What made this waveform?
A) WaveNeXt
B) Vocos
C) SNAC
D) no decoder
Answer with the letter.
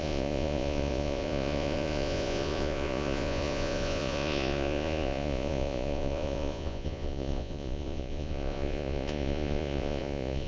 B